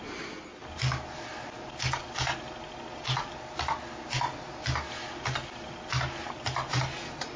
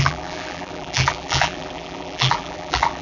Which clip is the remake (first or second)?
second